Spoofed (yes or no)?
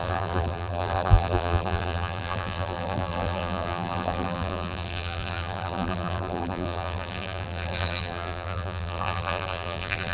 yes